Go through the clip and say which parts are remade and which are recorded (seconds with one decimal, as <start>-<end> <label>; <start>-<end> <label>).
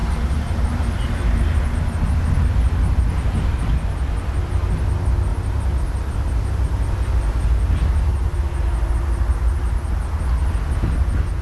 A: 0.0-2.0 remade; 2.0-5.3 recorded; 5.3-6.1 remade; 6.1-11.4 recorded